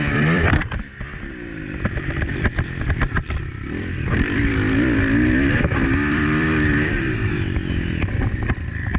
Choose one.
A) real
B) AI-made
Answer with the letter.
B